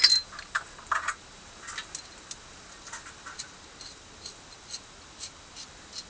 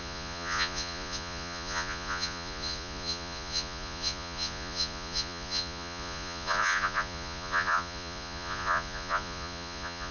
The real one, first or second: first